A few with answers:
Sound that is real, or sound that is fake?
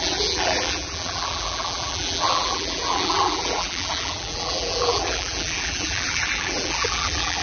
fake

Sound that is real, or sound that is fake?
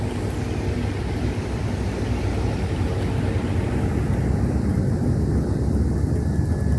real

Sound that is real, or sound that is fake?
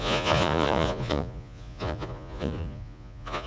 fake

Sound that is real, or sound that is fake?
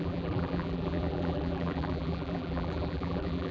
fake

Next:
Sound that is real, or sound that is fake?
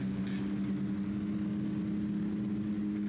real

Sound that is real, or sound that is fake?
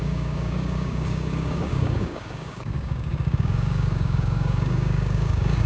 fake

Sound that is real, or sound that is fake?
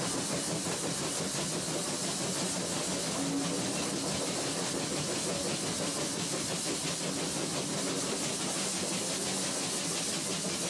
real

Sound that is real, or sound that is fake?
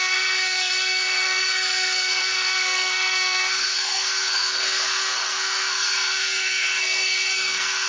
fake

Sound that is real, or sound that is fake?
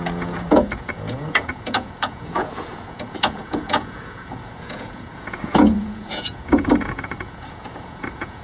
fake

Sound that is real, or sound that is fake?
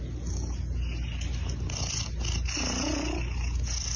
real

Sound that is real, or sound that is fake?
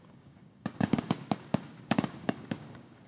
fake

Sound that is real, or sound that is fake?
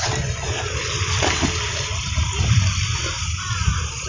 fake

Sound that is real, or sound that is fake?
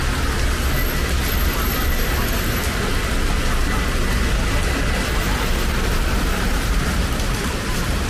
real